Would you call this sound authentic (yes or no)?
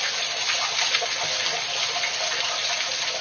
yes